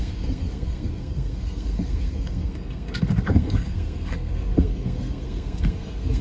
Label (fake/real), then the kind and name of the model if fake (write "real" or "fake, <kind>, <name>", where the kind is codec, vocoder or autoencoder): fake, codec, SNAC